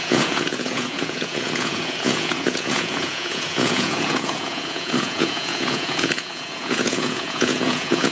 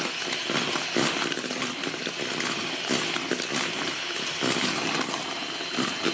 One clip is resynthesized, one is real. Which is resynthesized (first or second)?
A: first